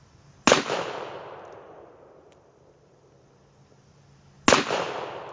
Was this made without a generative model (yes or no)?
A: yes